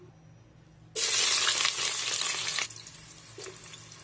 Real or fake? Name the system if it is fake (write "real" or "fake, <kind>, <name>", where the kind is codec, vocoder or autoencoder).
real